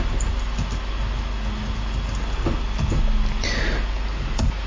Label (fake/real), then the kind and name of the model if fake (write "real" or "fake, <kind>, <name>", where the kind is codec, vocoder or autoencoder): real